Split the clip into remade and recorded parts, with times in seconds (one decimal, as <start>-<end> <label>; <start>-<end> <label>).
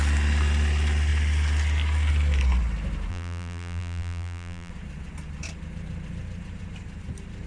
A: 0.0-3.1 recorded; 3.1-4.7 remade; 4.7-7.5 recorded